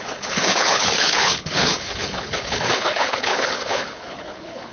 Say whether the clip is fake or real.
fake